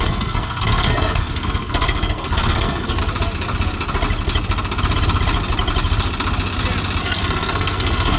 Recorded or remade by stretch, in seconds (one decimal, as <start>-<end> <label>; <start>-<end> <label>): 0.0-3.0 remade; 3.0-7.0 recorded; 7.0-8.2 remade